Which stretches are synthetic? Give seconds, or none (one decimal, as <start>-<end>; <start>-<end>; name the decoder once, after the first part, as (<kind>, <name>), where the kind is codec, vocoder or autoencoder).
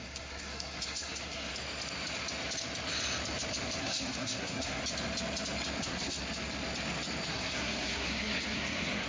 0.0-1.5 (codec, SNAC); 3.8-4.8; 5.8-6.2; 7.3-9.1